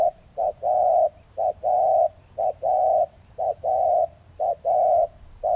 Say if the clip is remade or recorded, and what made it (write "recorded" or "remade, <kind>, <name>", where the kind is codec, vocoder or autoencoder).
remade, vocoder, BigVGAN v2